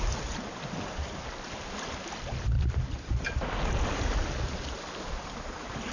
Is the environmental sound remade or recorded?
recorded